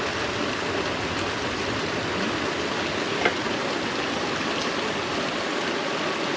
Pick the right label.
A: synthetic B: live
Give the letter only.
B